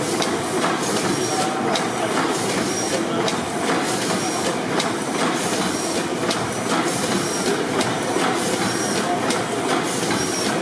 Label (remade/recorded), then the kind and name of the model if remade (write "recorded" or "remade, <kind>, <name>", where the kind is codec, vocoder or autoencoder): recorded